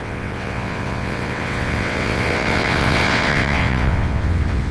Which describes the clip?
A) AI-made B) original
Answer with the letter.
A